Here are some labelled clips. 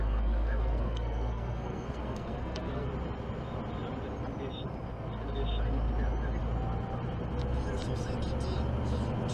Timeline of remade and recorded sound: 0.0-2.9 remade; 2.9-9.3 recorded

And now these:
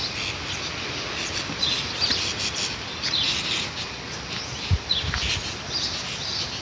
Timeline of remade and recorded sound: 0.0-6.6 recorded

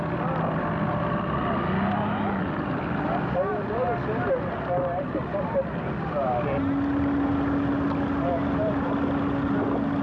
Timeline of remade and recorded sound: 0.0-10.0 recorded

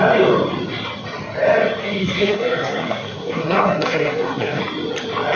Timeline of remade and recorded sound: 0.0-1.8 recorded; 1.8-4.6 remade; 4.6-5.4 recorded

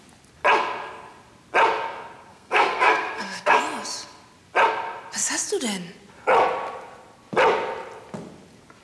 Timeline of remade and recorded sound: 0.0-2.3 recorded; 2.3-3.6 remade; 3.6-8.8 recorded

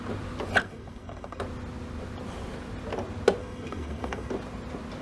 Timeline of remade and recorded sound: 0.0-0.6 recorded; 0.6-1.4 remade; 1.4-3.4 recorded; 3.4-4.3 remade; 4.3-5.0 recorded